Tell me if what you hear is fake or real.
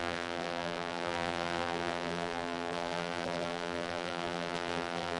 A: fake